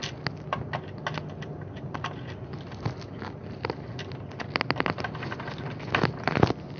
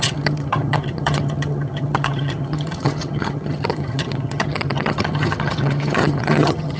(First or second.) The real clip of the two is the first